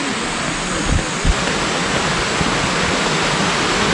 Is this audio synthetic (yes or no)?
no